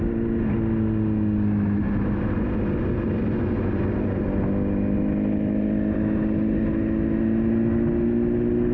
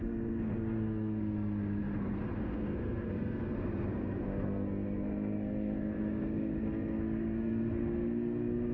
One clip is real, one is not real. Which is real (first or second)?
first